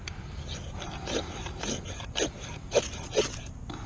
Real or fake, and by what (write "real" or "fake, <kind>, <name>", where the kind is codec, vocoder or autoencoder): real